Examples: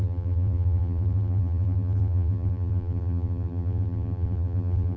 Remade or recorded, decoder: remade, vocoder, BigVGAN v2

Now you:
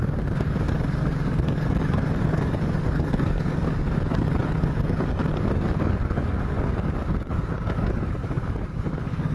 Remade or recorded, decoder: remade, codec, DAC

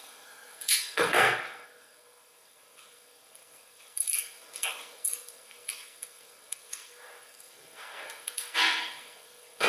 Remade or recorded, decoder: remade, codec, SNAC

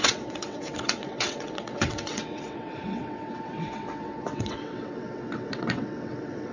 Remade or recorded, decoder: remade, vocoder, WaveNeXt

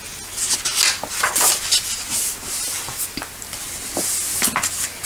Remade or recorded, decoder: recorded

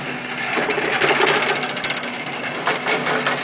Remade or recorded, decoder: recorded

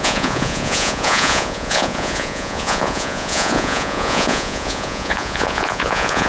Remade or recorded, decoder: remade, vocoder, Vocos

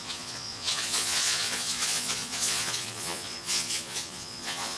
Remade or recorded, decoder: remade, vocoder, Vocos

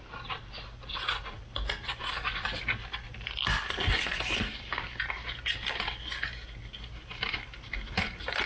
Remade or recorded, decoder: recorded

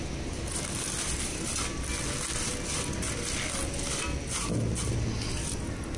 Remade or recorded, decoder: recorded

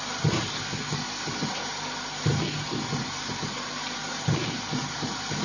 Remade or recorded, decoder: recorded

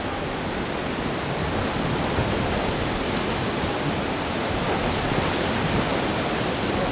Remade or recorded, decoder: recorded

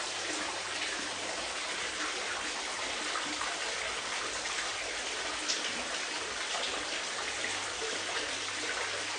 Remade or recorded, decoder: recorded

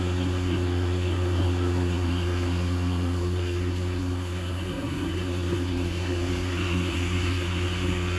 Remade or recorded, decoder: remade, codec, SNAC